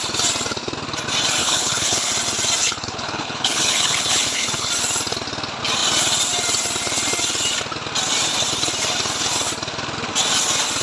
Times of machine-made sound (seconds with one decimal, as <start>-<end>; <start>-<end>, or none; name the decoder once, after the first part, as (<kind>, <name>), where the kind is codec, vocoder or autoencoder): 1.4-2.1 (codec, HILCodec); 2.6-4.7